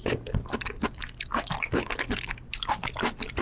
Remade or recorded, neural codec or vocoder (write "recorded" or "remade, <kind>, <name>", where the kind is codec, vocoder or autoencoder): recorded